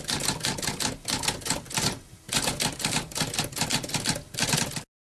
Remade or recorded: recorded